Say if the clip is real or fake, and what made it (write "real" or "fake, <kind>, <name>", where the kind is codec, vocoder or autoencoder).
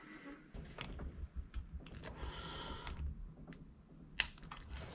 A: real